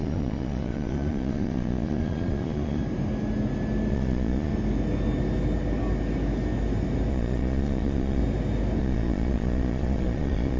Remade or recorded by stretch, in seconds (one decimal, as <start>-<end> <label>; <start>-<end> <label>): 0.0-2.8 remade; 2.8-3.9 recorded; 3.9-4.5 remade; 4.5-7.1 recorded; 7.1-8.2 remade; 8.2-8.8 recorded; 8.8-10.6 remade